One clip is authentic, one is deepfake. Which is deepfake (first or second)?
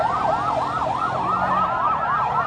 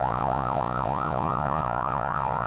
second